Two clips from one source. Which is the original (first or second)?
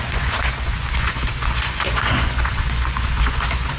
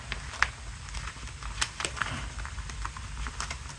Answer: second